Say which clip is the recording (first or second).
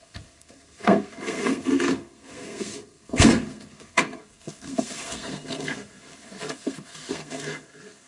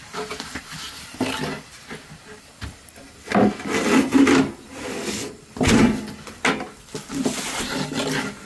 second